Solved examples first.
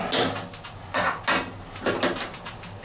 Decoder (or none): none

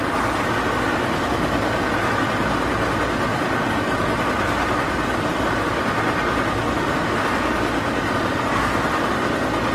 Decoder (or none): none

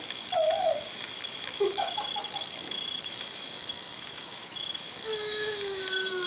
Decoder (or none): autoencoder, DAC-VAE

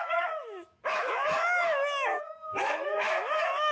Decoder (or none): autoencoder, DAC-VAE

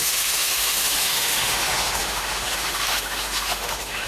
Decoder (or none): autoencoder, DAC-VAE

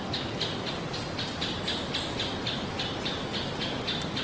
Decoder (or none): none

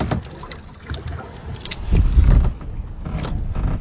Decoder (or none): none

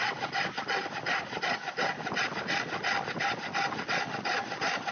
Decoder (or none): none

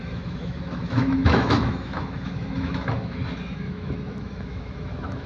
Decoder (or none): autoencoder, DAC-VAE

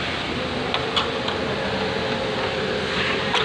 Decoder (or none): none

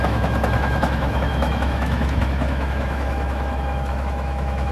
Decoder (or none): autoencoder, DAC-VAE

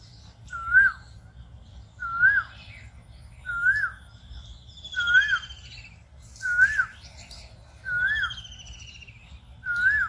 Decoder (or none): none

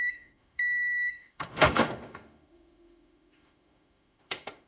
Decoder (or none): autoencoder, DAC-VAE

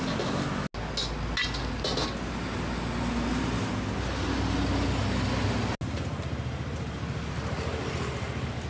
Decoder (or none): none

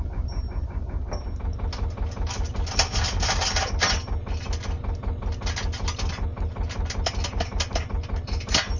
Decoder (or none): none